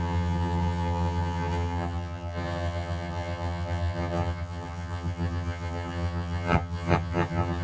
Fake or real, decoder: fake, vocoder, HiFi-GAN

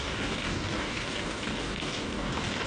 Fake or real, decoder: fake, codec, DAC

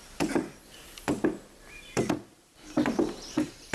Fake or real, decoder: fake, vocoder, BigVGAN v2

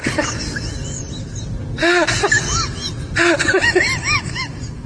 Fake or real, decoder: real